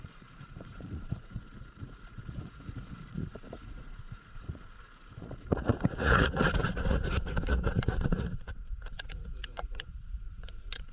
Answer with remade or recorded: remade